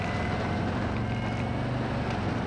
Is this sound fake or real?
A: real